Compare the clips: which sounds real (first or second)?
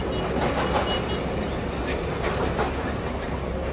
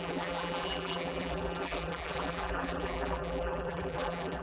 first